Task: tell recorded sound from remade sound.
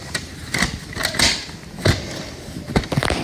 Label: recorded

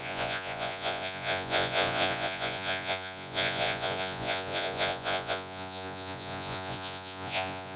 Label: remade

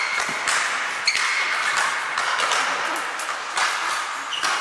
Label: recorded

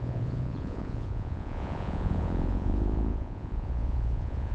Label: remade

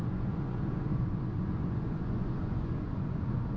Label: remade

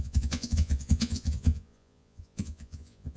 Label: remade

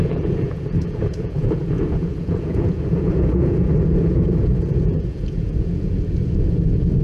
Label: remade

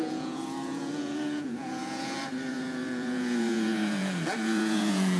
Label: remade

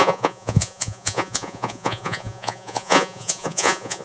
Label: remade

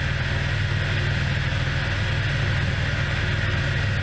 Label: recorded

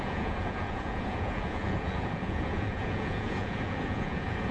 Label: remade